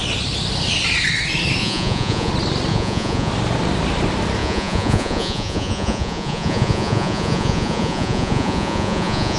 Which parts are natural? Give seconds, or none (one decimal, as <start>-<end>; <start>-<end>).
0.0-1.6; 2.3-2.7; 3.3-4.4